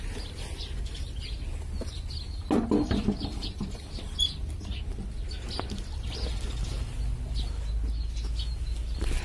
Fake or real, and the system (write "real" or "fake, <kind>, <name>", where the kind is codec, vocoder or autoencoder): real